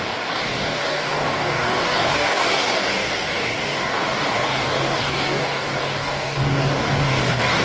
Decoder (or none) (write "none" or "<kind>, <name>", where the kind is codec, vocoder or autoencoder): codec, DAC